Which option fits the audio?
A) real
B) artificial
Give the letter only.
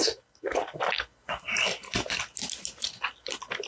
A